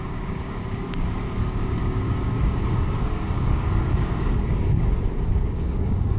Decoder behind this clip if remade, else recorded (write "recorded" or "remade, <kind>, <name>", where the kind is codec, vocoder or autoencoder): remade, codec, DAC